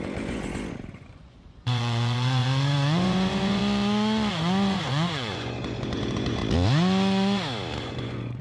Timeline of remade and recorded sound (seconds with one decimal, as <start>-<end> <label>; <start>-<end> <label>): 0.0-3.6 remade; 3.6-4.3 recorded; 4.3-6.4 remade; 6.4-7.8 recorded; 7.8-8.4 remade